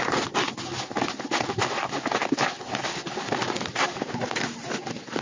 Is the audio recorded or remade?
recorded